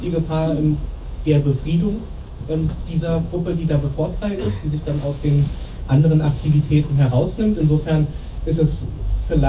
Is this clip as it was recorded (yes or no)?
no